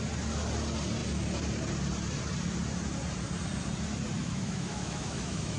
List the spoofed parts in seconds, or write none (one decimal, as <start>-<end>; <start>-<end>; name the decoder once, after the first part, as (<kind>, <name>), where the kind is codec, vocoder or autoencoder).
4.2-5.6 (autoencoder, DAC-VAE)

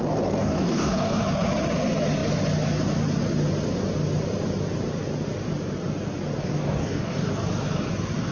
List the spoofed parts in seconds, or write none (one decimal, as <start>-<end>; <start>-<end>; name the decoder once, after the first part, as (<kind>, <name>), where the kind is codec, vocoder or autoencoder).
0.4-1.2 (codec, DAC); 6.4-7.3

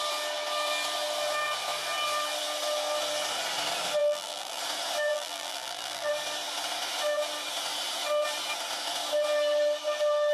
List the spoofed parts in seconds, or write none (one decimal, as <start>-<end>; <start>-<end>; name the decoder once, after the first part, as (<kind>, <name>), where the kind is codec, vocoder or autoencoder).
4.0-4.6 (vocoder, BigVGAN v2); 5.1-6.1

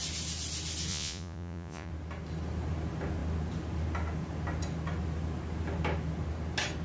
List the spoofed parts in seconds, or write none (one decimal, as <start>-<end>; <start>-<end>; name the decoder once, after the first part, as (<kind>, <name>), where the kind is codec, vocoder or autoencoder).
0.9-1.9 (vocoder, Vocos)

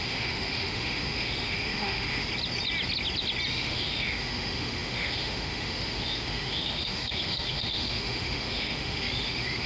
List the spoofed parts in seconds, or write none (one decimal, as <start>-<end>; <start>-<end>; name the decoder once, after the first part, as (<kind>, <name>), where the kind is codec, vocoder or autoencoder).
0.0-2.3 (autoencoder, DAC-VAE); 3.5-9.7